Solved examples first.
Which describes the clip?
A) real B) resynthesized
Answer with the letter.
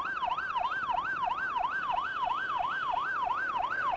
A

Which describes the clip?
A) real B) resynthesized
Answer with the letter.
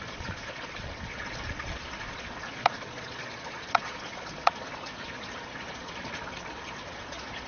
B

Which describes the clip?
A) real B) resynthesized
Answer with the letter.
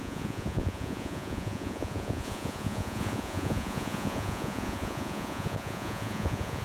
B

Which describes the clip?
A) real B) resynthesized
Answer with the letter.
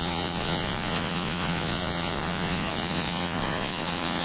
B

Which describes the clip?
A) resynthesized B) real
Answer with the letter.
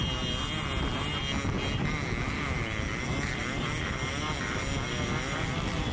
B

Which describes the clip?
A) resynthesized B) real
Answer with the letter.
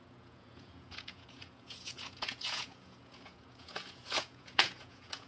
A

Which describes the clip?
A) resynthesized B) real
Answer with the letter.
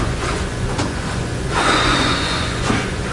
A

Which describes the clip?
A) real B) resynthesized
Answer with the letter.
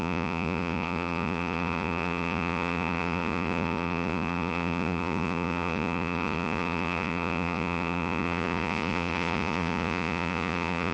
B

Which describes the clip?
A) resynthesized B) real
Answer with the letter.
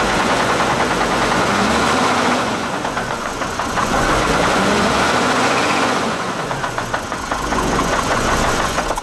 A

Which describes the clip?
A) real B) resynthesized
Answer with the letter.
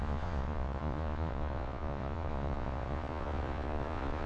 B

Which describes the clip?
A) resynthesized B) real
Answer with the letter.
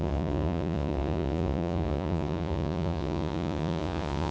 A